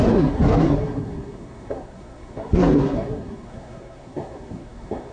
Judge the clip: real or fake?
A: fake